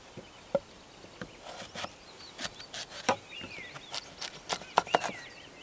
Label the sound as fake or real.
real